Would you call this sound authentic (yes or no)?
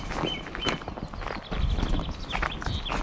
yes